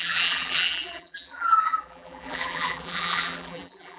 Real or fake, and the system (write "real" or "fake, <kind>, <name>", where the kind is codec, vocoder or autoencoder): fake, vocoder, BigVGAN v2